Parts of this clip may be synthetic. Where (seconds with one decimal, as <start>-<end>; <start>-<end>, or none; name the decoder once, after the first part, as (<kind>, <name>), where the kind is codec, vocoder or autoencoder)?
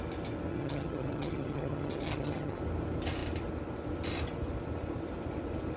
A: 0.5-2.6 (vocoder, HiFi-GAN)